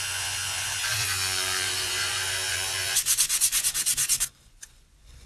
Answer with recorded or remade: remade